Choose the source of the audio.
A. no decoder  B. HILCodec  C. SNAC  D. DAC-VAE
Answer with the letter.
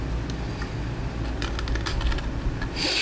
A